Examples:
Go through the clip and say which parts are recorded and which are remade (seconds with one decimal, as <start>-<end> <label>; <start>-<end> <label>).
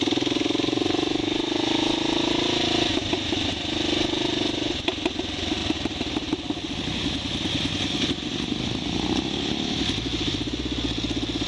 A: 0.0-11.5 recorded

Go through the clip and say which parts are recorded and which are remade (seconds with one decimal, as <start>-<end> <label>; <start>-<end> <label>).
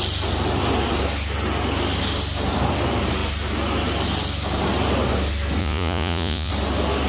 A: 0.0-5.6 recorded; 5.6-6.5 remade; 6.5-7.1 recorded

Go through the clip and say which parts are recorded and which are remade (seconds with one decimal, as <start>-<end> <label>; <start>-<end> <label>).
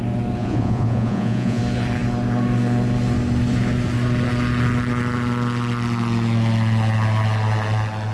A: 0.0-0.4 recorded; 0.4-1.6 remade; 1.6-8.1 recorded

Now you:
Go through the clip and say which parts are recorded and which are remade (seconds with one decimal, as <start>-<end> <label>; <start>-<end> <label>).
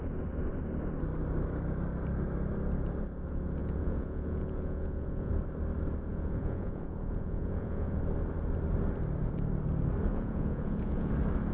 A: 0.0-3.6 recorded; 3.6-5.3 remade; 5.3-6.1 recorded; 6.1-8.0 remade; 8.0-10.1 recorded; 10.1-11.1 remade; 11.1-11.5 recorded